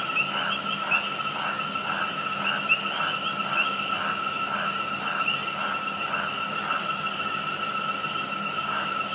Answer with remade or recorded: recorded